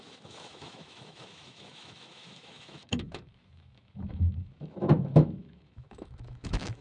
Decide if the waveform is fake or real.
fake